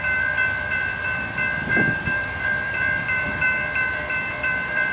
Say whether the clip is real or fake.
fake